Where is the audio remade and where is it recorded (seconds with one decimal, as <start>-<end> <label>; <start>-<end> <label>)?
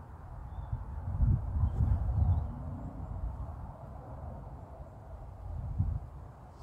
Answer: 0.0-6.6 recorded